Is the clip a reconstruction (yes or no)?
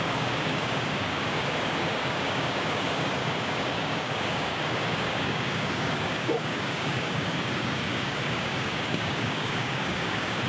yes